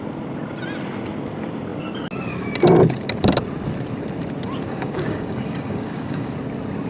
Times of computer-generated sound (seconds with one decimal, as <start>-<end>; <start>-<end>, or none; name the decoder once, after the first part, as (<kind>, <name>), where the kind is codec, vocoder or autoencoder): 4.7-6.3 (codec, DAC)